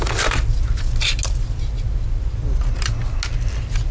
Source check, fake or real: real